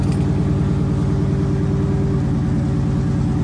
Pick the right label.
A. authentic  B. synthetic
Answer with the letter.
A